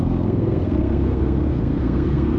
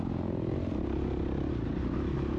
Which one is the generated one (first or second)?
first